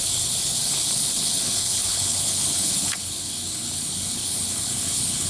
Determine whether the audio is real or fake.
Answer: fake